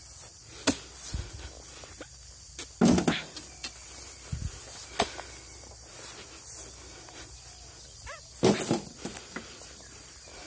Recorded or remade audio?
recorded